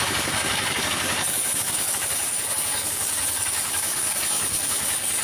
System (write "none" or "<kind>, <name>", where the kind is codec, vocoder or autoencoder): codec, DAC